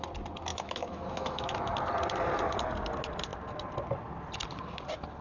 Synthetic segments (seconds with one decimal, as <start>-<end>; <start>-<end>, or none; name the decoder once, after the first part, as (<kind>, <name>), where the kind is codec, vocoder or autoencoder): 0.5-1.7 (autoencoder, DAC-VAE)